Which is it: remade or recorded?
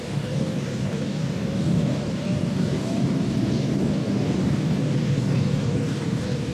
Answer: remade